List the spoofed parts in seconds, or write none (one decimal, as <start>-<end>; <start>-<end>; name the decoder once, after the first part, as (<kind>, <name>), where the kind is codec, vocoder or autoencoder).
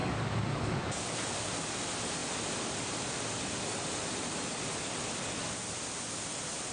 0.0-1.5 (codec, DAC)